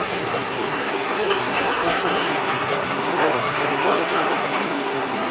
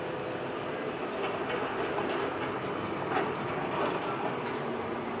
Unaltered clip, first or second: second